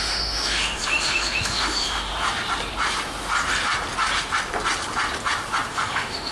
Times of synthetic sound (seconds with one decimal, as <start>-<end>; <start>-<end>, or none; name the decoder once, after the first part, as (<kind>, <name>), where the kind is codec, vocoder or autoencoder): 0.0-2.1 (autoencoder, DAC-VAE); 5.7-6.3